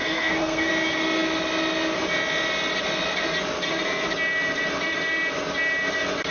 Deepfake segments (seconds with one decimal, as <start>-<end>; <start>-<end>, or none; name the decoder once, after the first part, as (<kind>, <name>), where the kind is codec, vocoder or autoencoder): 0.0-0.7 (codec, SNAC)